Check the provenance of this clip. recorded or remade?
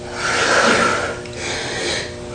recorded